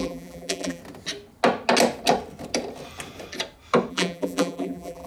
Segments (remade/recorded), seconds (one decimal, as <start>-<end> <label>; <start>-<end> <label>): 0.0-0.8 remade; 0.8-3.9 recorded; 3.9-5.1 remade